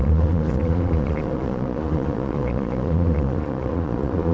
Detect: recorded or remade remade